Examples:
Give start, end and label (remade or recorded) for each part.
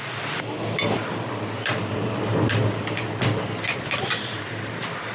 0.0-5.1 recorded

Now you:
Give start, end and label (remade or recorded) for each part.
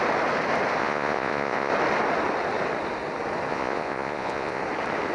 0.0-0.8 recorded; 0.8-1.7 remade; 1.7-3.5 recorded; 3.5-4.6 remade; 4.6-5.1 recorded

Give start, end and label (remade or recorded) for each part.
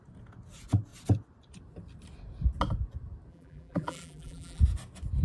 0.0-3.3 recorded; 3.3-4.6 remade; 4.6-5.2 recorded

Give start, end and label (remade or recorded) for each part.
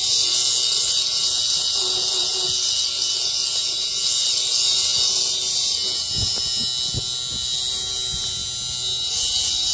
0.0-9.7 recorded